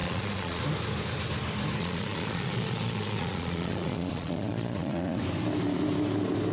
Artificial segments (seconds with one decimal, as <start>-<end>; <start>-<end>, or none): 0.0-0.6; 1.8-5.2